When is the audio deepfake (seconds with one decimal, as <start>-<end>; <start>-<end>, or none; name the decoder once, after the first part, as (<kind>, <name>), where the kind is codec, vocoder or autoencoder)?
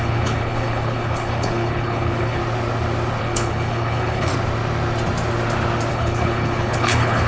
0.0-2.4 (codec, HILCodec); 3.2-4.3; 5.9-7.3